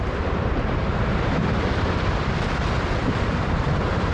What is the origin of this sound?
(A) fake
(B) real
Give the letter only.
A